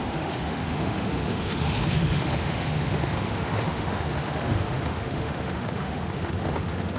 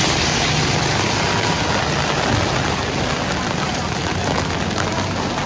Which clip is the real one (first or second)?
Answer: second